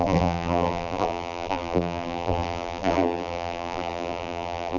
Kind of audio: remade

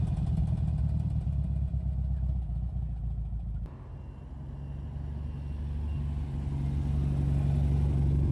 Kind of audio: recorded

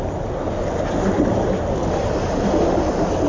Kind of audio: recorded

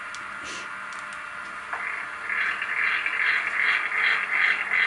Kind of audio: recorded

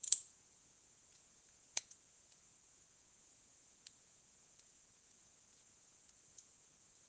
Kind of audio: remade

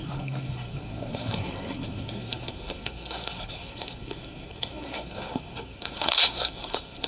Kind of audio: remade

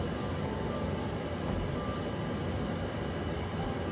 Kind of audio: recorded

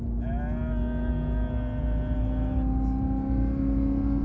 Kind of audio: recorded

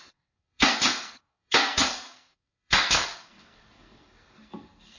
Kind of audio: remade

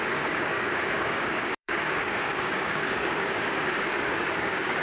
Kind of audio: remade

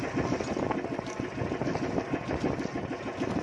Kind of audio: recorded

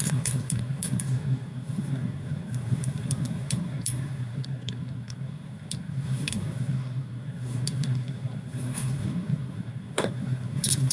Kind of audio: remade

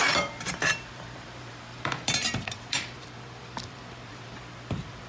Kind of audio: remade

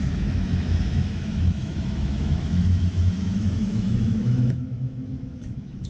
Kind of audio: remade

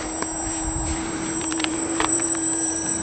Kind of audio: remade